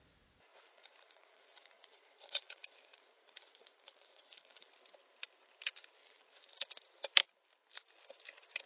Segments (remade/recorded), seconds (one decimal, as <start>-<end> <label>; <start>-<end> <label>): 0.0-0.5 recorded; 0.5-4.7 remade; 4.7-6.0 recorded; 6.0-6.7 remade; 6.7-8.7 recorded